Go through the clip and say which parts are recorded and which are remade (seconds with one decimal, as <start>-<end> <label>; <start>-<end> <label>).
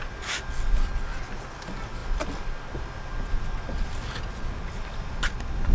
0.0-5.7 recorded